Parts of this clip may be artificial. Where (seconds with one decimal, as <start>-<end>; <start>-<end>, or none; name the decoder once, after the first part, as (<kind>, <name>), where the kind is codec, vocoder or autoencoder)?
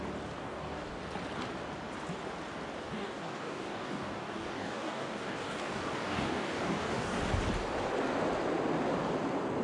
0.4-1.0 (codec, DAC); 2.8-7.2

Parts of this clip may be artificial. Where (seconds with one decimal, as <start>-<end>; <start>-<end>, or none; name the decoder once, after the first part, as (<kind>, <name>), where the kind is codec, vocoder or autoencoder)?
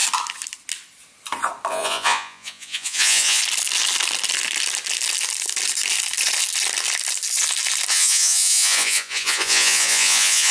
1.7-3.4 (vocoder, Vocos); 7.9-10.5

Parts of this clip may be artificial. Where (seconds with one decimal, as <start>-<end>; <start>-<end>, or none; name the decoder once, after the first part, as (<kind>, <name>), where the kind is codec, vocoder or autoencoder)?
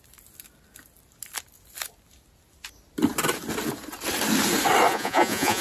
4.9-5.6 (vocoder, Vocos)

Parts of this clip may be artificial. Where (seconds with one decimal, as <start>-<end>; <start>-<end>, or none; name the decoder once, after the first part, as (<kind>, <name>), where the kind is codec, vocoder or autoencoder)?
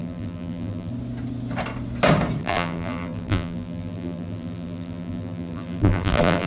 0.0-0.9 (vocoder, BigVGAN v2); 2.4-6.5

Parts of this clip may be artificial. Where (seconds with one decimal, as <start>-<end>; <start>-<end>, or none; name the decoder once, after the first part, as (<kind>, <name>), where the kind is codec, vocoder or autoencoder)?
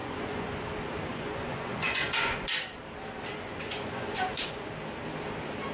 0.0-0.6 (vocoder, Vocos); 1.1-2.5; 3.3-4.7